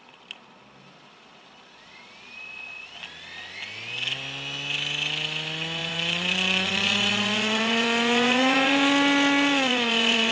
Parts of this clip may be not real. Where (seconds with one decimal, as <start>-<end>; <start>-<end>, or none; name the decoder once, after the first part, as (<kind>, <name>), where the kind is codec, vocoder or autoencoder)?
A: 5.8-10.3 (vocoder, Vocos)